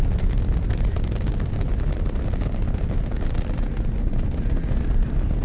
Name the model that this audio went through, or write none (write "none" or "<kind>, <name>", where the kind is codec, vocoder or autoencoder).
none